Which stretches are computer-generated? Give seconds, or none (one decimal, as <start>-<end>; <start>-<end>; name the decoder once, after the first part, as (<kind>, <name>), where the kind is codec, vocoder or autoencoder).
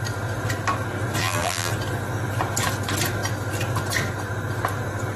1.2-1.7 (vocoder, BigVGAN v2)